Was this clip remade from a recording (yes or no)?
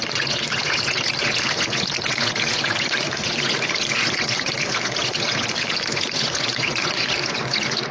yes